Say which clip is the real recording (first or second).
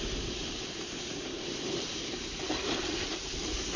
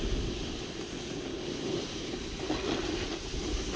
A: second